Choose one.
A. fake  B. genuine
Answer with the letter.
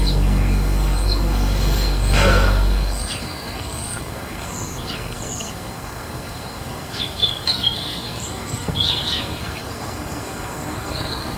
A